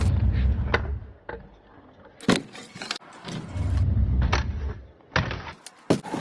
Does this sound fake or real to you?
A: real